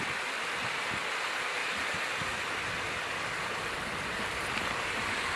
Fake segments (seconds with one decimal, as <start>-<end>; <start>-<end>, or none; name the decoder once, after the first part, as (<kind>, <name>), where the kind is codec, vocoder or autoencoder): none

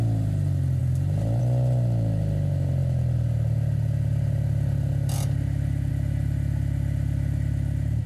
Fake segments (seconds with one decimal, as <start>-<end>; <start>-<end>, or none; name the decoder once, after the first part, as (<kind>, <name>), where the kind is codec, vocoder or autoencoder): none

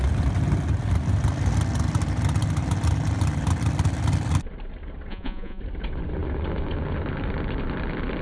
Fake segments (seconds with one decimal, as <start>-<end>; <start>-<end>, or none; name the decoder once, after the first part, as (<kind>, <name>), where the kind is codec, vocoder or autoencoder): 5.1-5.6 (vocoder, Vocos)

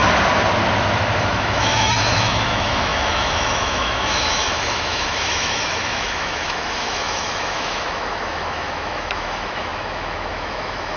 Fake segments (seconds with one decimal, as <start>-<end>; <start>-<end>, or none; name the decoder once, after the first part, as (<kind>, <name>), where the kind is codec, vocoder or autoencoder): 1.2-11.0 (autoencoder, DAC-VAE)

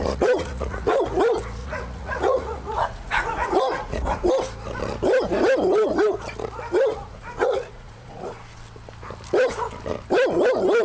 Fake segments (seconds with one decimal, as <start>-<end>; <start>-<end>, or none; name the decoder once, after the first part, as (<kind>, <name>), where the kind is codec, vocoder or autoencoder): 0.0-1.0 (vocoder, Vocos); 1.6-4.3; 6.9-8.3

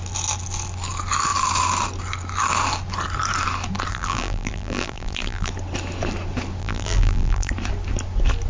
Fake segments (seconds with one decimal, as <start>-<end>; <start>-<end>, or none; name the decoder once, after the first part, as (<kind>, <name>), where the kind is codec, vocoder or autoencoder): 3.9-5.5 (vocoder, BigVGAN v2); 6.6-7.5